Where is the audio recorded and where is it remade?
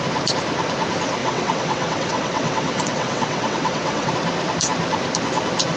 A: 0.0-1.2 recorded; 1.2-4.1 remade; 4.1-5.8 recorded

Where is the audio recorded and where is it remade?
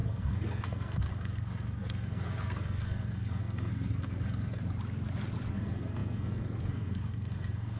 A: 0.0-4.6 remade; 4.6-5.5 recorded; 5.5-7.8 remade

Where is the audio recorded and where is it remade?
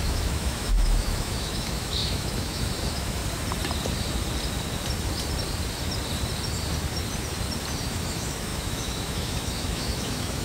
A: 0.0-3.2 remade; 3.2-7.9 recorded; 7.9-10.4 remade